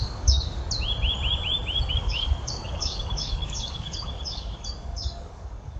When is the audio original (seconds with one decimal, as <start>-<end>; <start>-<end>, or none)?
0.6-1.9